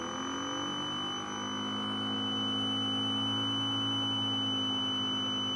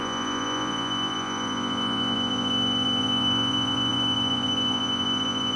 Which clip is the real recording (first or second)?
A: first